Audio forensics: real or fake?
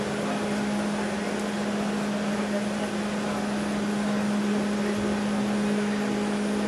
real